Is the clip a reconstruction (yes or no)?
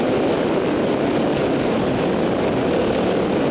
no